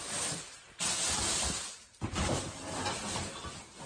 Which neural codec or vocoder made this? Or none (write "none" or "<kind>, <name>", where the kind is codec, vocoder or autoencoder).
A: none